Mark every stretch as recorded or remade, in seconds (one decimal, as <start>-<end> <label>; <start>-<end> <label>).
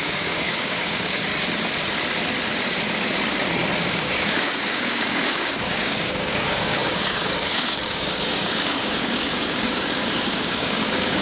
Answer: 0.0-1.3 remade; 1.3-3.9 recorded; 3.9-11.2 remade